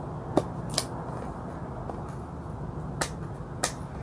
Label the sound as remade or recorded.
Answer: recorded